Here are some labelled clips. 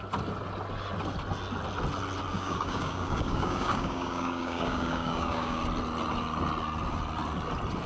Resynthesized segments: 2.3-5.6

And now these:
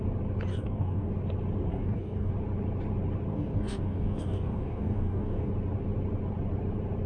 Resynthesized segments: 0.5-1.1; 1.7-2.3; 3.3-5.5